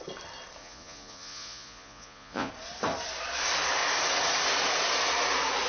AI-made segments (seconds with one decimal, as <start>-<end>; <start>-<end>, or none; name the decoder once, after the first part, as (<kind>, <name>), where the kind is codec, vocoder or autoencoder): 0.6-2.5 (vocoder, Vocos)